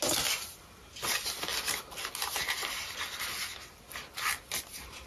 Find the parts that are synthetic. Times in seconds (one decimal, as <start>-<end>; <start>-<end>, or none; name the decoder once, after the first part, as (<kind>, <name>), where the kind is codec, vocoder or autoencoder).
none